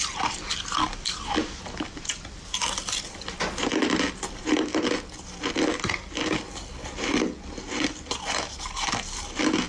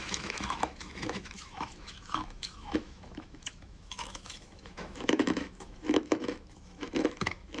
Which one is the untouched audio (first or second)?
first